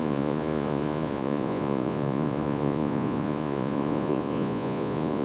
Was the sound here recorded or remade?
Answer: remade